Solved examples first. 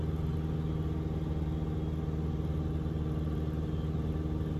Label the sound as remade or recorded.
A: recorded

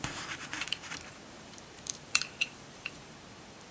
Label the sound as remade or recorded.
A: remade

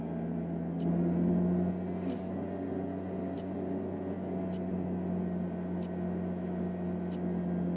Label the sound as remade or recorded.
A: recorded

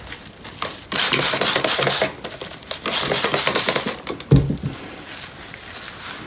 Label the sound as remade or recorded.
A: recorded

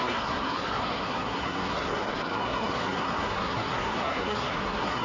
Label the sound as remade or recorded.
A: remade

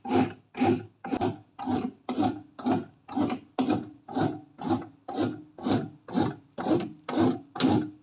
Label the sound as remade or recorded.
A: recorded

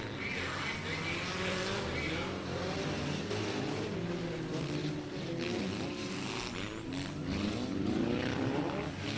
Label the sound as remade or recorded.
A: recorded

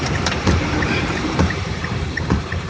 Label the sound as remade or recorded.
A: remade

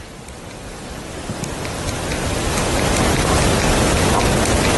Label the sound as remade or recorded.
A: recorded